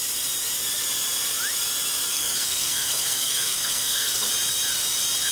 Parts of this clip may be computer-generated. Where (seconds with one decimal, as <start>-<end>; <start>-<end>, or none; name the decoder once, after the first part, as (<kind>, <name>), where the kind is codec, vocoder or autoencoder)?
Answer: 2.1-4.3 (codec, SNAC)